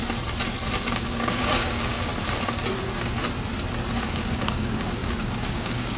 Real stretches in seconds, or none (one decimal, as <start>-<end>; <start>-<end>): 0.0-0.8; 2.1-4.0